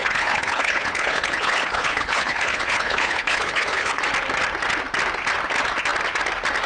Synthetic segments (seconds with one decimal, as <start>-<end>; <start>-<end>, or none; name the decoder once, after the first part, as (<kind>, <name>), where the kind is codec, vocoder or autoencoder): 0.0-4.0 (codec, HILCodec)